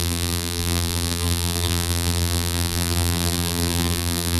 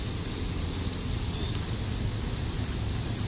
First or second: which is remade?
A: first